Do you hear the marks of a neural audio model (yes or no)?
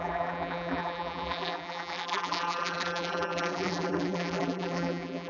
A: yes